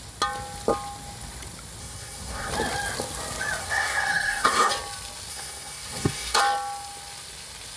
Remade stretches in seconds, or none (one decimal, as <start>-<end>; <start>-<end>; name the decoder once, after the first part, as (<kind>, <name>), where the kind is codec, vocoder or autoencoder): 1.8-2.5 (codec, SNAC); 3.6-4.7; 5.3-6.4